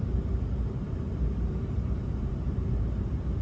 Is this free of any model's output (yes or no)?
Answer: no